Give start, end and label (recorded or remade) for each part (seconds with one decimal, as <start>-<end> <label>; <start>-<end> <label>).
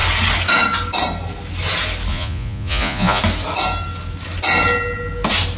0.0-2.1 recorded; 2.1-3.2 remade; 3.2-5.6 recorded